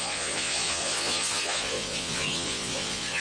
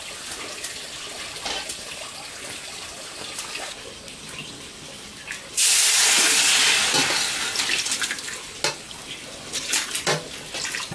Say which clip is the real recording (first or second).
second